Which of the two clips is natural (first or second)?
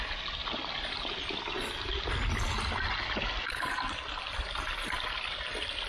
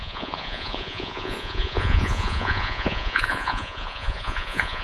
first